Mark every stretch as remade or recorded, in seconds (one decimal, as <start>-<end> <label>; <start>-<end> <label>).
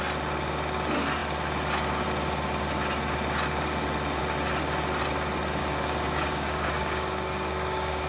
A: 0.0-5.6 recorded; 5.6-8.1 remade